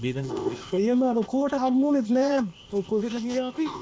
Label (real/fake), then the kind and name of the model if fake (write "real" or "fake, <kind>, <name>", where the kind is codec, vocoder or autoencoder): fake, codec, ZipCodec